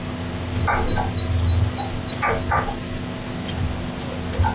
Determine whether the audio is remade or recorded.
recorded